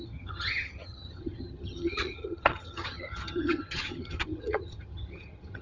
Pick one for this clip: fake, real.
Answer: fake